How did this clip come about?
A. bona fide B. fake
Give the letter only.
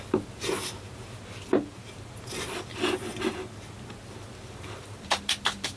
A